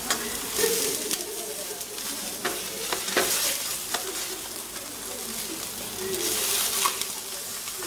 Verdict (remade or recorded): recorded